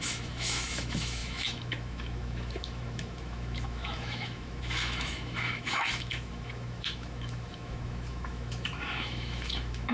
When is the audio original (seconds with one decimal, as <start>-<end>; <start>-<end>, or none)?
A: none